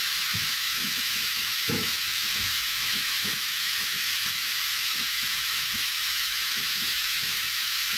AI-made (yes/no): yes